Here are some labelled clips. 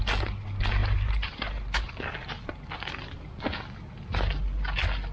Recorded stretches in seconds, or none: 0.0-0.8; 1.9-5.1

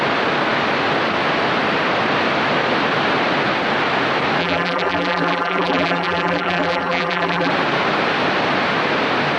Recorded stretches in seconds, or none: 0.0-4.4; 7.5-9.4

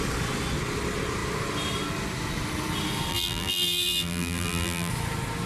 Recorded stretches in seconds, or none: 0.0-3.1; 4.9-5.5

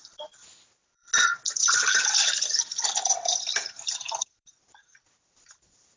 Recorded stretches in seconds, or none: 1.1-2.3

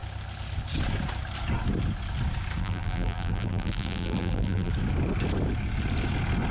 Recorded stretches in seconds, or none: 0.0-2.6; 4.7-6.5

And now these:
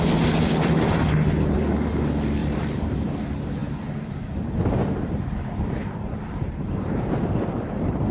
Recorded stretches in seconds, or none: 0.0-2.4; 3.1-3.6; 7.3-8.1